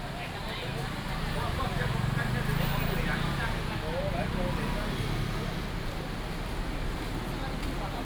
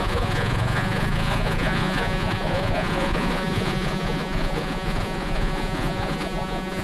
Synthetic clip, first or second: second